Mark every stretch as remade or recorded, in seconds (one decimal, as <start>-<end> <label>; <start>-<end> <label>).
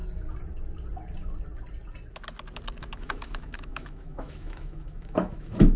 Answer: 0.0-2.8 recorded; 2.8-5.8 remade